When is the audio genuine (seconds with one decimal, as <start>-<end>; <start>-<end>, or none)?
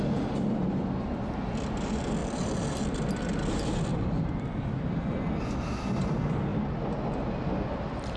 0.0-8.2